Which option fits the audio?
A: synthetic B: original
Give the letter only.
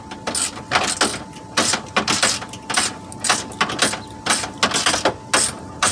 B